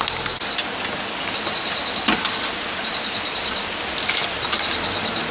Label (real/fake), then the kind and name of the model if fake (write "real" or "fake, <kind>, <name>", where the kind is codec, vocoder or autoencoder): real